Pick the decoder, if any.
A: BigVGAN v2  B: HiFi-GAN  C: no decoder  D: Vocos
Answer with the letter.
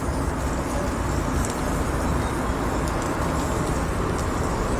C